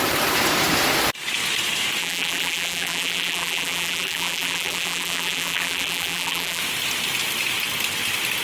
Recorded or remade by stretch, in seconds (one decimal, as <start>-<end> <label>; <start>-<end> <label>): 0.0-2.0 recorded; 2.0-6.6 remade; 6.6-8.4 recorded